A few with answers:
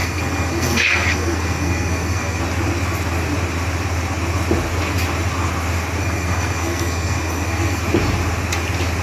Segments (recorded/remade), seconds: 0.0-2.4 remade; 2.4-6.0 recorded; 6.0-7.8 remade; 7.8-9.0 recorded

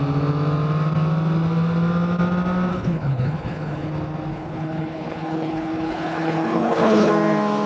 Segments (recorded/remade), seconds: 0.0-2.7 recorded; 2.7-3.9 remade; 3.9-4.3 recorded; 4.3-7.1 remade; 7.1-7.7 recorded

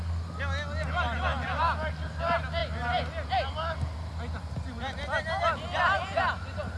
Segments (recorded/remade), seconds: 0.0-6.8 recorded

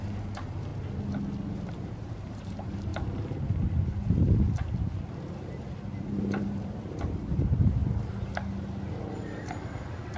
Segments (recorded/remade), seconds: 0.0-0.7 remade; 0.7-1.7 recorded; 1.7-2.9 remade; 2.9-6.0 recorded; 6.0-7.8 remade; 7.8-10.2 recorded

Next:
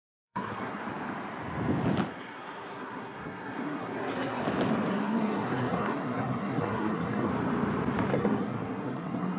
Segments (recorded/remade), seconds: 0.0-0.8 remade; 0.8-2.1 recorded; 2.1-4.4 remade; 4.4-4.9 recorded; 4.9-7.3 remade; 7.3-8.1 recorded; 8.1-9.4 remade

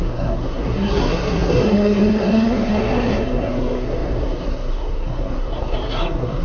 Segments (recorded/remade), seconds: 0.0-6.4 remade

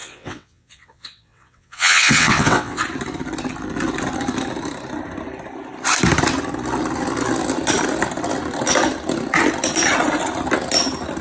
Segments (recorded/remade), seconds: 0.0-2.8 remade; 2.8-11.2 recorded